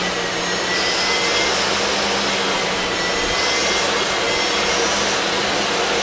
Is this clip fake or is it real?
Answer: real